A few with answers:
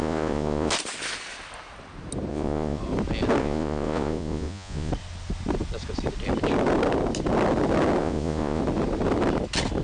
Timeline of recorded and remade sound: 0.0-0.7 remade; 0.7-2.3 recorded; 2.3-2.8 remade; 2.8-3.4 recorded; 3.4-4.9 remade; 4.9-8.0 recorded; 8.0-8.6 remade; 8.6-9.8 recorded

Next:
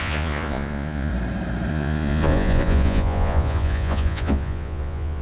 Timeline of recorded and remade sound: 0.0-1.1 remade; 1.1-1.7 recorded; 1.7-5.2 remade

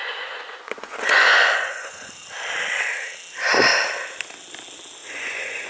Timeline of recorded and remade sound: 0.0-2.1 remade; 2.1-5.0 recorded; 5.0-5.7 remade

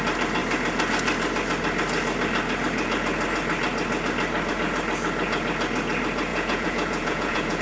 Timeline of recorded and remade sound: 0.0-6.3 recorded; 6.3-7.6 remade